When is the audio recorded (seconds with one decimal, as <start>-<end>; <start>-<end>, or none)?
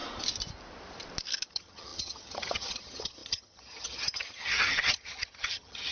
0.0-1.5